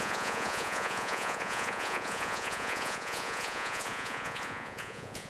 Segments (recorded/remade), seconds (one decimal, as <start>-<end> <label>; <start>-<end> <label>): 0.0-5.3 remade